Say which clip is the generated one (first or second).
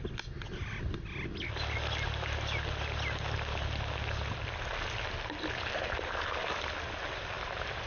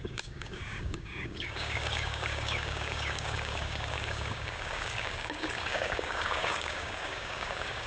second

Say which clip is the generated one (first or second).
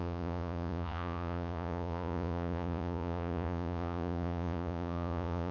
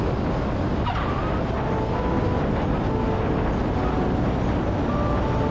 first